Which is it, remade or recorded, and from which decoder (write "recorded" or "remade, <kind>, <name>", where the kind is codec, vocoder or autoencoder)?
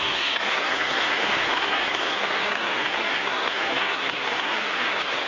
remade, codec, SNAC